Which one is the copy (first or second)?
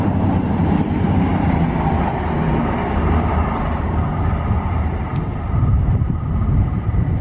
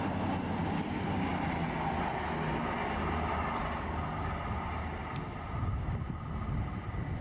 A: first